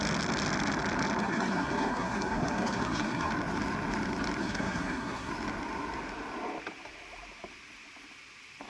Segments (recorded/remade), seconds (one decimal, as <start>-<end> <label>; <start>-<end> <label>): 0.0-1.2 recorded; 1.2-3.3 remade; 3.3-4.4 recorded; 4.4-5.3 remade; 5.3-8.7 recorded